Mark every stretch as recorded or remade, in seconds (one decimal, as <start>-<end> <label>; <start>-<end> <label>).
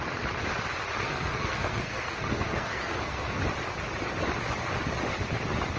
0.0-1.0 recorded; 1.0-3.4 remade; 3.4-5.8 recorded